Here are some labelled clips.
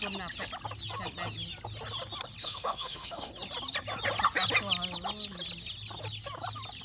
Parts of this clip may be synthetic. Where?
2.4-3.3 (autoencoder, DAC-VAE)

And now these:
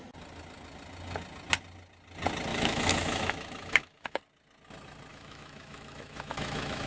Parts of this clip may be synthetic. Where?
2.5-4.2 (autoencoder, DAC-VAE); 5.1-6.9

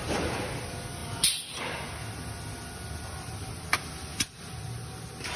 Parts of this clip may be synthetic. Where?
none

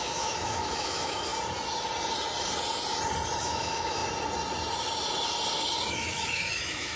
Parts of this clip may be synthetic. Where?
0.0-1.3 (autoencoder, DAC-VAE); 3.4-4.0; 5.9-7.0

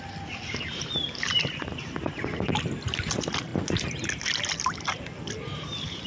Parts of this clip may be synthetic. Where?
none

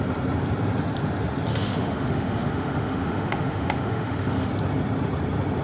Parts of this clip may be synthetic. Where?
1.5-4.5 (autoencoder, DAC-VAE)